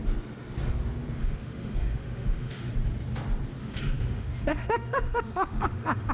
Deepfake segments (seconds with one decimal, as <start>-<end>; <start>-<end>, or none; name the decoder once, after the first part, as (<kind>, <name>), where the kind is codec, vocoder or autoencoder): 1.2-2.7 (autoencoder, DAC-VAE); 3.6-6.1